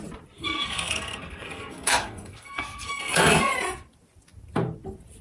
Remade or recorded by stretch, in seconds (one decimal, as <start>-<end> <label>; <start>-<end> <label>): 0.0-0.4 recorded; 0.4-3.5 remade; 3.5-5.2 recorded